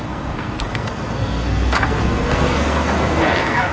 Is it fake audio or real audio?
fake